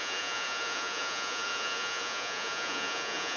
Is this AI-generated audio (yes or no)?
yes